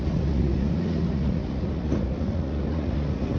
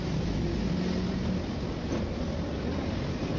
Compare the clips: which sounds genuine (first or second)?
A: second